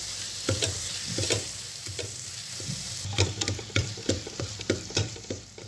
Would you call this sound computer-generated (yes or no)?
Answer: yes